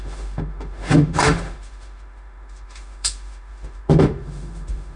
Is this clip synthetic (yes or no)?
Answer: yes